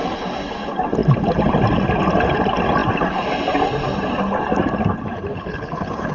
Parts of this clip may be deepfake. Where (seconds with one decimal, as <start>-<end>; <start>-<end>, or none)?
5.3-6.1